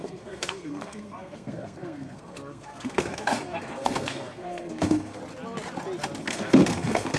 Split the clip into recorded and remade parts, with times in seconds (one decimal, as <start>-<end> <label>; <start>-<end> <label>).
0.0-5.2 remade; 5.2-6.2 recorded; 6.2-7.2 remade